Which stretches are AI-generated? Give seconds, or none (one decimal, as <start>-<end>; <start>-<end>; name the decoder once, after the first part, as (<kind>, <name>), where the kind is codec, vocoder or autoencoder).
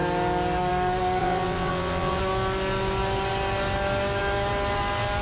1.2-2.2 (vocoder, WaveNeXt)